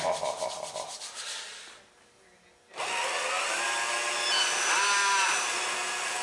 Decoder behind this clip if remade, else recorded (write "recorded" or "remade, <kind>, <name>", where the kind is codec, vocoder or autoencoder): recorded